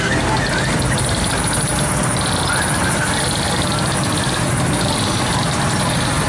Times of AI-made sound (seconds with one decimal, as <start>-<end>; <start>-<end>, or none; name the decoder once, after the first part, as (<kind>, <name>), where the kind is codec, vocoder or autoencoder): none